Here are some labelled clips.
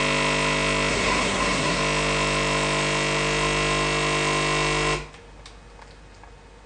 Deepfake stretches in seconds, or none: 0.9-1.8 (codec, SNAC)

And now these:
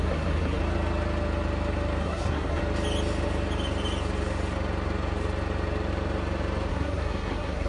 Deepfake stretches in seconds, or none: 0.0-0.6 (codec, SNAC); 2.0-2.6; 6.7-7.7

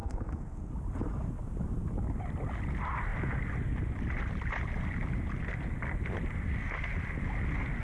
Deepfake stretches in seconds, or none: 0.0-0.7 (codec, SNAC)

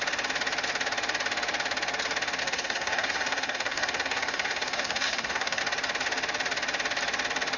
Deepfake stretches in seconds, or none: 2.4-5.6 (codec, SNAC)